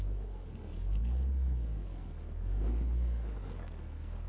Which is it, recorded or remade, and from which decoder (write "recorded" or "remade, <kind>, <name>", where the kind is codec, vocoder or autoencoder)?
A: remade, codec, SNAC